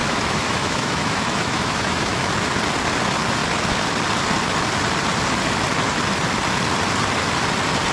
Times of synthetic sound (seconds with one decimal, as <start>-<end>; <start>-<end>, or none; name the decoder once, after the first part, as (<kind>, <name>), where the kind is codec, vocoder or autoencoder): 0.0-2.3 (autoencoder, DAC-VAE)

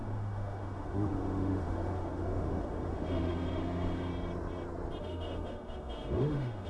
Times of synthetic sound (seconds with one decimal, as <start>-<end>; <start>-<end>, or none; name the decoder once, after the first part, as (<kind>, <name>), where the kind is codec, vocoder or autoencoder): 0.0-4.1 (autoencoder, DAC-VAE); 5.0-6.7

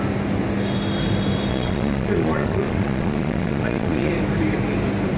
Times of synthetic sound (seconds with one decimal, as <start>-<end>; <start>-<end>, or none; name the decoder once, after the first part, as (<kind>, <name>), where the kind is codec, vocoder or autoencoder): 1.5-4.1 (vocoder, Vocos)

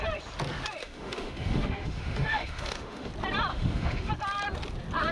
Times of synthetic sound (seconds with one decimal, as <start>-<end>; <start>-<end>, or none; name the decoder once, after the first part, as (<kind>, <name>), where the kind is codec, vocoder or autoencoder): 0.8-3.1 (autoencoder, DAC-VAE); 3.5-4.1